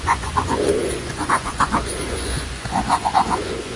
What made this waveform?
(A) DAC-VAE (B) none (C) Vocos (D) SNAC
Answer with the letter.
C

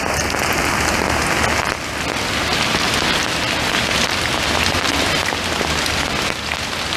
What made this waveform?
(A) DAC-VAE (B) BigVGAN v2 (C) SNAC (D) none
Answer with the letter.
D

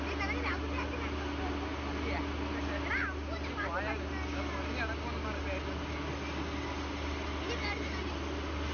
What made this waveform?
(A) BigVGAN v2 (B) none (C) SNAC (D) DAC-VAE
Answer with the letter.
B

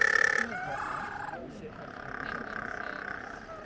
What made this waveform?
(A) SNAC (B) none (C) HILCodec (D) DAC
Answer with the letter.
B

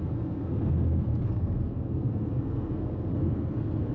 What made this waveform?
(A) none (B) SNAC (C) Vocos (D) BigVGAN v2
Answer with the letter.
B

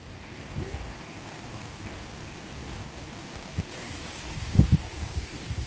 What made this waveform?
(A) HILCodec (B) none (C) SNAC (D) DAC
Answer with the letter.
D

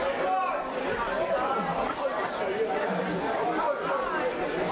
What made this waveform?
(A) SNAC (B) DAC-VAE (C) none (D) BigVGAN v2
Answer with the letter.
C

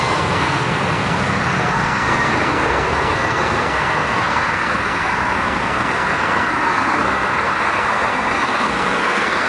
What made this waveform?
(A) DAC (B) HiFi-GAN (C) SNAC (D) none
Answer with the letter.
C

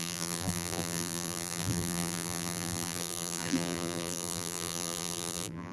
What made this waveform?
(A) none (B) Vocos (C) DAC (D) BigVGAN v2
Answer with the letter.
D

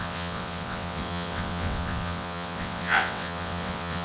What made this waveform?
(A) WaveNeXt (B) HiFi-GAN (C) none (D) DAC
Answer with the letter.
A